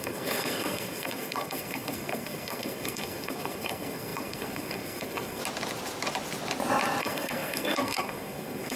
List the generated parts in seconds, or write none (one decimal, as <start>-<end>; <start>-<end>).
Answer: 0.0-5.4; 7.0-8.8

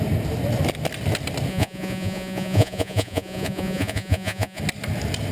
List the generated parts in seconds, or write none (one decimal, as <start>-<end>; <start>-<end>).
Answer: 1.5-4.6

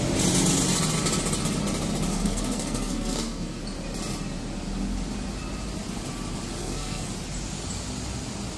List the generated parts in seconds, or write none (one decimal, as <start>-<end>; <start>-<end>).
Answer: 2.1-3.6; 6.6-7.1

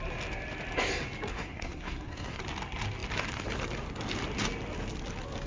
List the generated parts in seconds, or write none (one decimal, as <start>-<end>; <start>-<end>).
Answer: 1.3-2.4

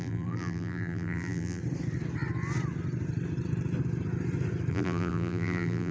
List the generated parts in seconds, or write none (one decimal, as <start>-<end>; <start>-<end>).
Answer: 0.0-1.6; 4.7-5.9

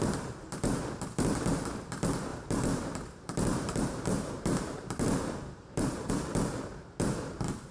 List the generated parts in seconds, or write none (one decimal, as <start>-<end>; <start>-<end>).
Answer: 2.3-6.1

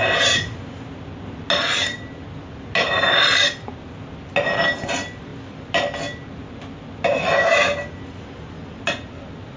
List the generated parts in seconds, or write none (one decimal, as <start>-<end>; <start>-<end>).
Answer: none